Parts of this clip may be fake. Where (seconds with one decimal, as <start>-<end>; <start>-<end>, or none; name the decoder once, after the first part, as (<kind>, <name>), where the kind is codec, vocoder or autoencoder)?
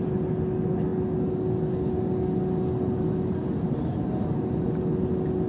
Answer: none